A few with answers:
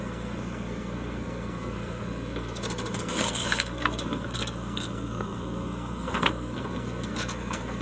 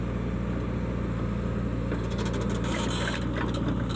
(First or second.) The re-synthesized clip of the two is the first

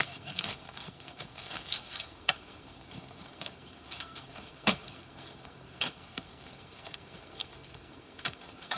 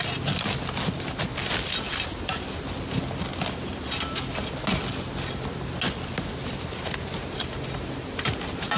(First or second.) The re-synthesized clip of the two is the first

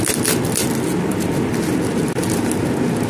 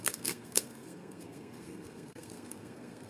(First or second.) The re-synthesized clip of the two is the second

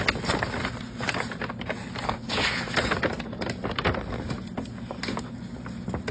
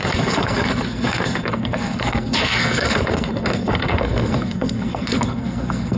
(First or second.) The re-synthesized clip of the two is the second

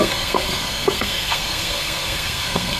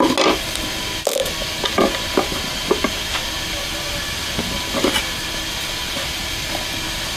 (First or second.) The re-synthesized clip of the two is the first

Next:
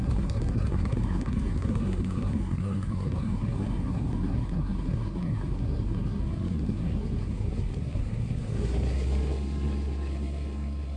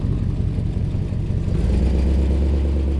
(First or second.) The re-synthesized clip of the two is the first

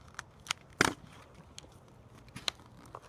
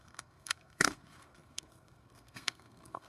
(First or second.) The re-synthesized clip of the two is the second